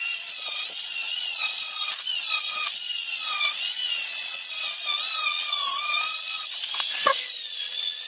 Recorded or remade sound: remade